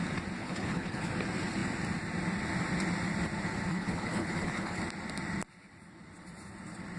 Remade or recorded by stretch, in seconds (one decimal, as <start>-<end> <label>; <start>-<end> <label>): 0.0-0.4 recorded; 0.4-1.1 remade; 1.1-3.7 recorded; 3.7-4.8 remade; 4.8-7.0 recorded